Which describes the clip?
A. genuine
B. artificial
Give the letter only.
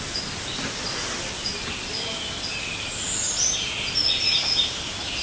A